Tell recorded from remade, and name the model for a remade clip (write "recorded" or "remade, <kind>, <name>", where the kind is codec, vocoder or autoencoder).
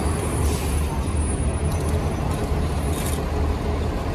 recorded